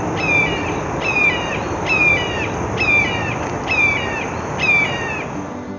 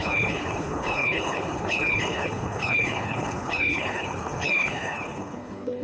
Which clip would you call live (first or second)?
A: first